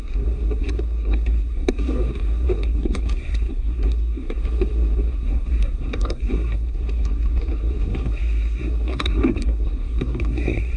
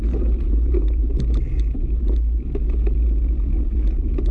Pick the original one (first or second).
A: second